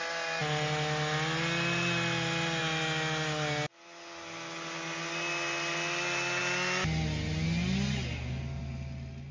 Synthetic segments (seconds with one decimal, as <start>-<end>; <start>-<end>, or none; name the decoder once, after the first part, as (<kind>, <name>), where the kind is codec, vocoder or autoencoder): none